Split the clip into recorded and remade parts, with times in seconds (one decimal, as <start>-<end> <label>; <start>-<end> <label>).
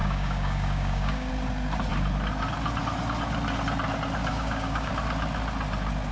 0.0-1.3 remade; 1.3-4.3 recorded; 4.3-4.9 remade; 4.9-6.1 recorded